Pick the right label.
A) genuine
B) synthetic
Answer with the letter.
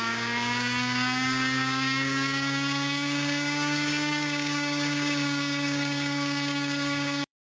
B